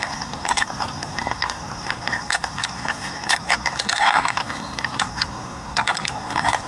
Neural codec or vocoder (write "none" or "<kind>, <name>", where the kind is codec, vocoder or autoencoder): codec, SNAC